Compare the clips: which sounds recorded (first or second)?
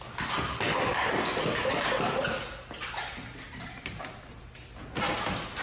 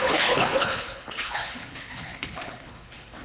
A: first